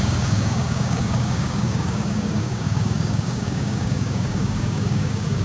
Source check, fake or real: fake